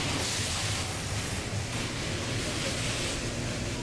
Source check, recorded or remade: recorded